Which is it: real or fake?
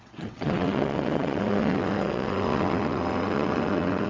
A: fake